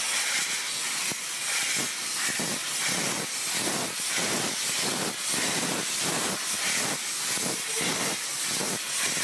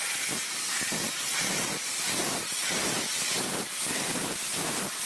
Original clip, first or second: first